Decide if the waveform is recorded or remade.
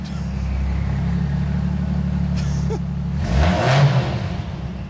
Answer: recorded